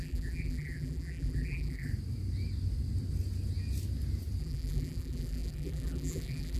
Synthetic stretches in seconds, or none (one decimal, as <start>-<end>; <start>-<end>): 0.0-1.9; 4.4-6.6